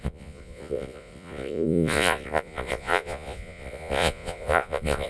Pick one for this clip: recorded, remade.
remade